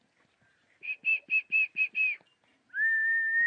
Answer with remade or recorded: recorded